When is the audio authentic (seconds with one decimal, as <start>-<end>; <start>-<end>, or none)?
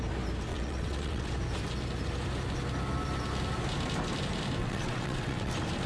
0.0-0.5; 1.3-4.6; 5.5-5.9